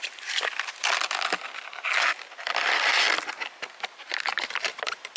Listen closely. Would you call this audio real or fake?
real